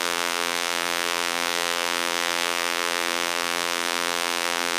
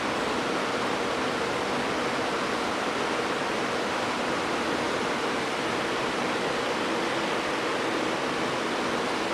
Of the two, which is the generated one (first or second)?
first